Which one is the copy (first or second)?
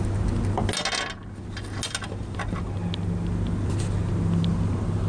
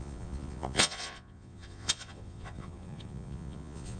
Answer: second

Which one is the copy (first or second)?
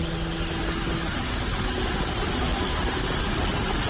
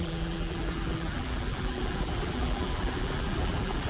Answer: second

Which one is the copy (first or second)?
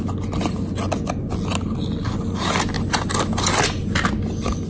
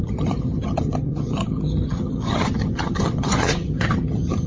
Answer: second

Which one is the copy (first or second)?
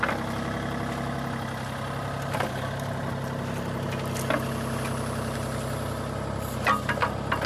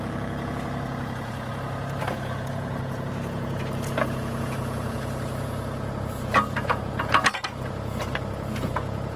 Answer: second